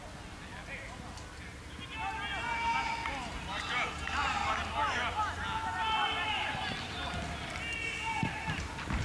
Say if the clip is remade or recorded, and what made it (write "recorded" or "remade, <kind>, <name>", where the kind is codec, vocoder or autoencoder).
recorded